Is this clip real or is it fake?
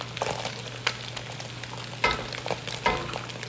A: real